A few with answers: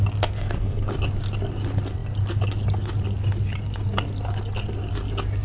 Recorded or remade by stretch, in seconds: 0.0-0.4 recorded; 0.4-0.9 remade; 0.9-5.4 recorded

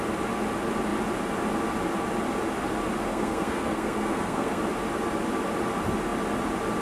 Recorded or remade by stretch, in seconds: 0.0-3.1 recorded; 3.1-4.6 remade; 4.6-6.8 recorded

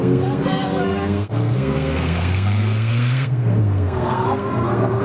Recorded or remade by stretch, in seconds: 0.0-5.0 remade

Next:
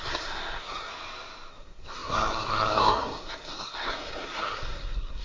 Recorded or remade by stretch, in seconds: 0.0-0.9 remade; 0.9-1.5 recorded; 1.5-5.2 remade